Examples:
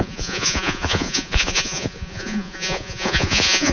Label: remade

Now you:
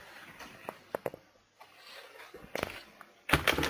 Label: recorded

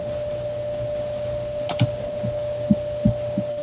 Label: recorded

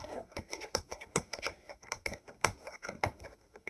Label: remade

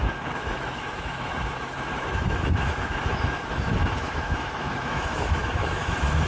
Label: remade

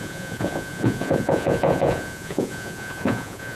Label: remade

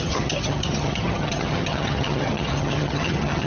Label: remade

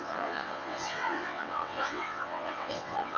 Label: remade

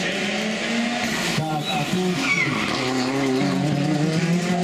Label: recorded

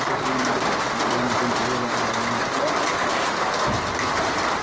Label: recorded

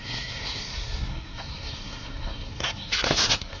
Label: remade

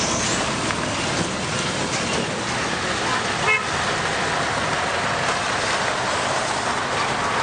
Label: recorded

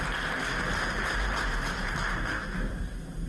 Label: recorded